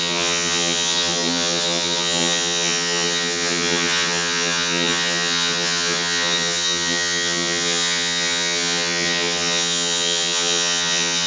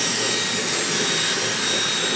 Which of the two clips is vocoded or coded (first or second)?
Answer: first